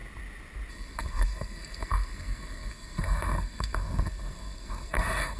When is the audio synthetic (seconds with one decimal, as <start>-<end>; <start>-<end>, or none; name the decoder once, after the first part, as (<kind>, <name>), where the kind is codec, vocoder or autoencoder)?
0.7-5.4 (codec, SNAC)